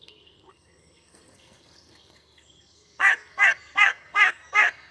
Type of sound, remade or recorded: remade